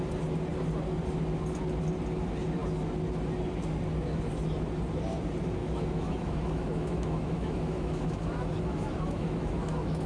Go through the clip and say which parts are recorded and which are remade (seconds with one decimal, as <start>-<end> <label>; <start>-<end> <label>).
0.0-5.6 recorded; 5.6-10.1 remade